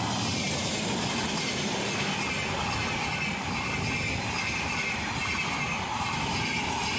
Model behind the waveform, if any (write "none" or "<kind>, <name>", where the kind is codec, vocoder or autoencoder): none